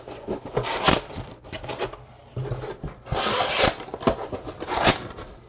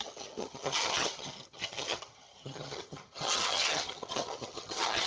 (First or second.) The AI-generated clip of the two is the second